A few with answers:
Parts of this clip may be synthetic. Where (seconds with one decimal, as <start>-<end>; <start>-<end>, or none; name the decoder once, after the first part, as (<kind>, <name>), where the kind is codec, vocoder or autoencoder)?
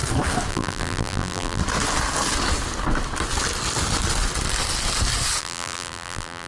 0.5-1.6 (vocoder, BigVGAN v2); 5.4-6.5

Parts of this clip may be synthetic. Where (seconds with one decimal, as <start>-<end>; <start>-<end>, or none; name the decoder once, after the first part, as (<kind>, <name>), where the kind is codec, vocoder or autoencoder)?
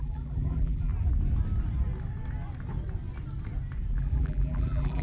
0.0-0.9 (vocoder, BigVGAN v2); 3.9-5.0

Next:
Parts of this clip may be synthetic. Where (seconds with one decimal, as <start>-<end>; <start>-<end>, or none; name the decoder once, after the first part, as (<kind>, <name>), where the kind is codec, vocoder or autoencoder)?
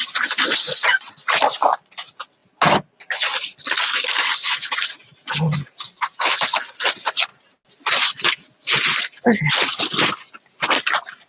5.0-5.8 (vocoder, BigVGAN v2)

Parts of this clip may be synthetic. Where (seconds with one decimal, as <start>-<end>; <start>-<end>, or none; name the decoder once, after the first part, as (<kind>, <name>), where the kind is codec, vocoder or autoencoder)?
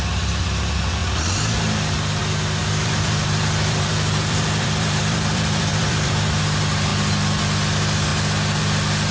2.6-6.4 (vocoder, BigVGAN v2)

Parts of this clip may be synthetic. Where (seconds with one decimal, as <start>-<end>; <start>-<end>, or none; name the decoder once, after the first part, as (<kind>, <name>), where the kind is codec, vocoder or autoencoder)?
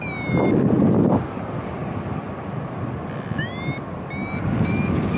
none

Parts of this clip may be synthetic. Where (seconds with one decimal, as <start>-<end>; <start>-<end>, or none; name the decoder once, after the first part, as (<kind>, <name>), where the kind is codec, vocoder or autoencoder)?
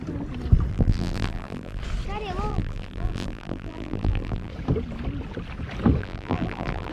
0.7-1.8 (vocoder, BigVGAN v2); 2.5-4.5; 6.0-6.9